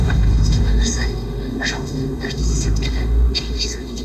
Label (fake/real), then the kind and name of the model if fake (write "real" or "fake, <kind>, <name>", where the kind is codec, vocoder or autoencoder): fake, autoencoder, DAC-VAE